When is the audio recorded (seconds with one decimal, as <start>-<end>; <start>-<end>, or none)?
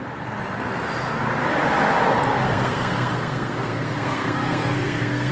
0.0-2.3